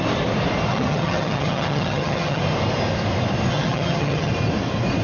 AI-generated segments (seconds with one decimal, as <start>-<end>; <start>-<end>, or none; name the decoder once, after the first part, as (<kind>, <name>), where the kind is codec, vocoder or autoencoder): 0.7-2.4 (vocoder, HiFi-GAN); 3.5-4.3